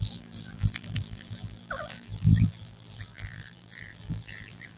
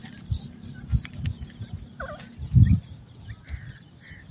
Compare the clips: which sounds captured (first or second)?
second